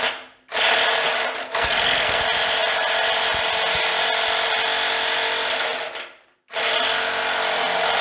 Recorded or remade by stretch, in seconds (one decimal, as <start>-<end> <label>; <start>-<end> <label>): 0.0-1.4 recorded; 1.4-2.2 remade; 2.2-8.0 recorded